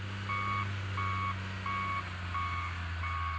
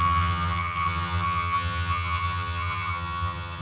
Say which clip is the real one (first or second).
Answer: first